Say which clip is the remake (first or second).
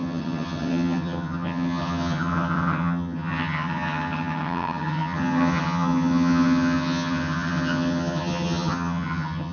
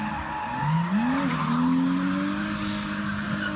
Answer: first